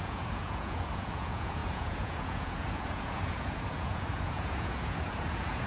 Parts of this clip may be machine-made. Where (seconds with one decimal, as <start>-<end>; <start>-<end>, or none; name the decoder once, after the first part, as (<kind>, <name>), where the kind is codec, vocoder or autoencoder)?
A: 0.0-5.7 (vocoder, Vocos)

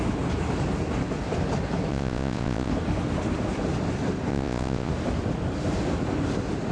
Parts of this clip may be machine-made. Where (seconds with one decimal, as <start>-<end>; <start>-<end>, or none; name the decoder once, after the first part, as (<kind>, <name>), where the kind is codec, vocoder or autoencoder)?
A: 1.9-2.7 (vocoder, Vocos); 4.3-4.9

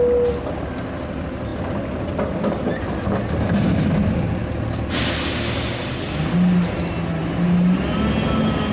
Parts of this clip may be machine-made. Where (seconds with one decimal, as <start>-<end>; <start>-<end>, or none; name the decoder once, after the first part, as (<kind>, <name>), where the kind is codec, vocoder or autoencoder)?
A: none

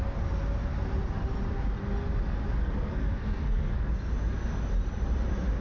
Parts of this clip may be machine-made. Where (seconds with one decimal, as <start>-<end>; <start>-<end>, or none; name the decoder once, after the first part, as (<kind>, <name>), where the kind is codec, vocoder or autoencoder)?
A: 2.6-3.9 (codec, SNAC)